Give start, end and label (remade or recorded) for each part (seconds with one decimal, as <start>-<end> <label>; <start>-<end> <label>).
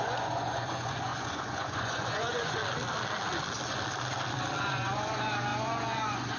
0.0-2.6 remade; 2.6-4.6 recorded; 4.6-6.4 remade